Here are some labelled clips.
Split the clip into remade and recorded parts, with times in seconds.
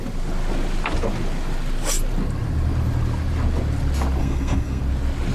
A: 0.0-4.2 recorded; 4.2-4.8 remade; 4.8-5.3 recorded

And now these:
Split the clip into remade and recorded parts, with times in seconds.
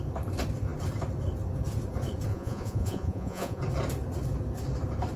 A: 0.0-2.3 recorded; 2.3-3.6 remade; 3.6-5.2 recorded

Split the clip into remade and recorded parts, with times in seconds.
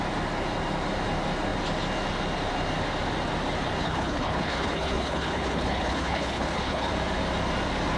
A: 0.0-3.8 recorded; 3.8-6.9 remade; 6.9-8.0 recorded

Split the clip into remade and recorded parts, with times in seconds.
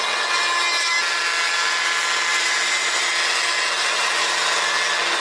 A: 0.0-2.3 recorded; 2.3-3.0 remade; 3.0-5.2 recorded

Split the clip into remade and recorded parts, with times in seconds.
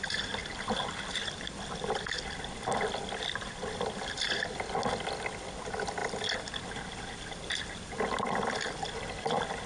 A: 0.0-9.7 recorded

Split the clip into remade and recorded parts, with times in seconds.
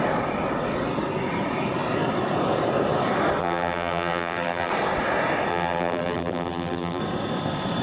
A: 0.0-3.4 recorded; 3.4-4.7 remade; 4.7-5.5 recorded; 5.5-7.0 remade; 7.0-7.8 recorded